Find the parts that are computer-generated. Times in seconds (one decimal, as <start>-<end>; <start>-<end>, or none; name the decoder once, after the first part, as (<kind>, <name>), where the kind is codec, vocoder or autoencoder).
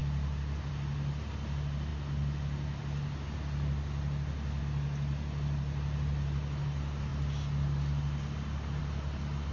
none